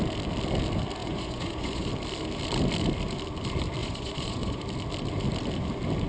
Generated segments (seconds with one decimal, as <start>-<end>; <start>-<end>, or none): 1.0-1.9; 3.8-4.6